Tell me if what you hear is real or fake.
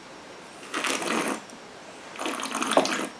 real